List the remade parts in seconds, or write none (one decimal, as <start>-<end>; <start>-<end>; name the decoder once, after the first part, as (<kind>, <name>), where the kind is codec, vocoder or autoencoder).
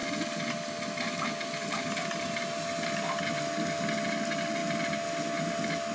none